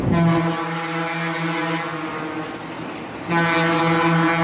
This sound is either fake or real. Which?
real